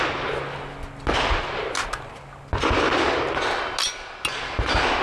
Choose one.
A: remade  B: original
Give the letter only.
B